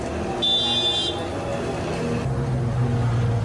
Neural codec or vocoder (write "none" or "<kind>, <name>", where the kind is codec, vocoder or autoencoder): none